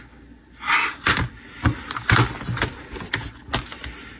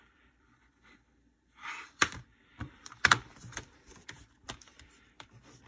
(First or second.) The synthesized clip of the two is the second